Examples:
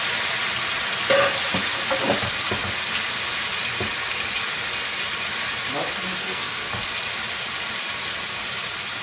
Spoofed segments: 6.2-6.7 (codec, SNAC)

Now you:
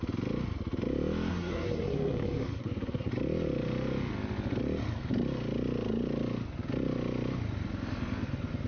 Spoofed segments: 1.3-3.1 (codec, SNAC)

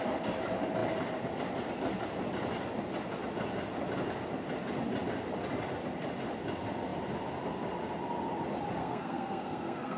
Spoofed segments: 8.8-10.0 (codec, SNAC)

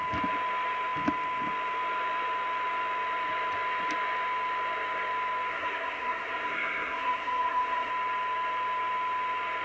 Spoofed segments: 5.5-7.9 (codec, SNAC)